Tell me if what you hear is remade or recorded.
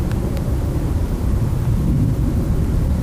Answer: remade